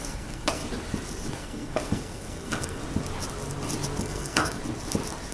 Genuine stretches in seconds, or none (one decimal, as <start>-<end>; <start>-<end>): 0.6-1.3; 2.8-4.0; 4.6-5.3